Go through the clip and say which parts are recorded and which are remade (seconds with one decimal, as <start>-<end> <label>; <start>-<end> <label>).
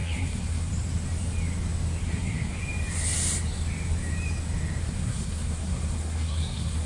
0.0-0.7 remade; 0.7-2.0 recorded; 2.0-2.6 remade; 2.6-4.8 recorded; 4.8-6.9 remade